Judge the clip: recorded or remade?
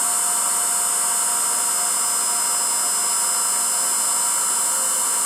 recorded